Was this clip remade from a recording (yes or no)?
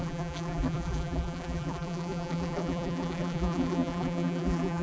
yes